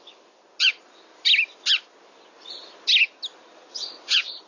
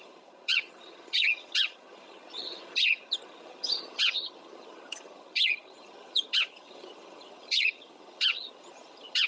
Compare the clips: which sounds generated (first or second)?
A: second